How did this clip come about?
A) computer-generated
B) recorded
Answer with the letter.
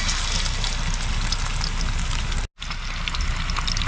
B